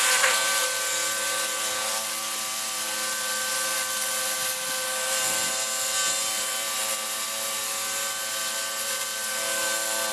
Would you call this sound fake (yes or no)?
no